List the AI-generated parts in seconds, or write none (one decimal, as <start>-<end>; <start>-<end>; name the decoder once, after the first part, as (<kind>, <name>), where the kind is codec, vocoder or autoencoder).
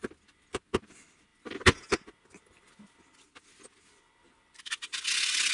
none